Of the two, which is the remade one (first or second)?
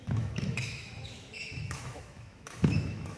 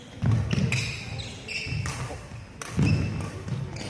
first